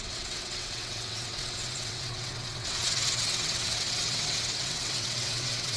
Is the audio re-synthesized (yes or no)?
yes